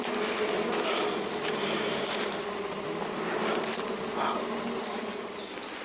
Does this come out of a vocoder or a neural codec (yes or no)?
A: no